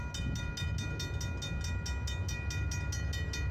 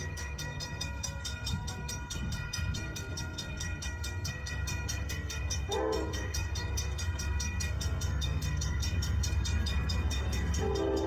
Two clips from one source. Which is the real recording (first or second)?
first